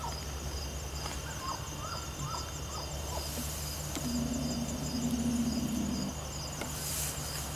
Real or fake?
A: real